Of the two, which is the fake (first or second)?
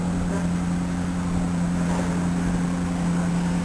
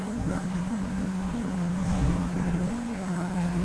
second